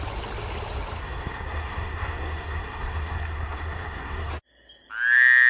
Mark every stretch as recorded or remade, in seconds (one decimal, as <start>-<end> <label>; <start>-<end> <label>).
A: 0.0-1.0 recorded; 1.0-4.3 remade; 4.3-5.5 recorded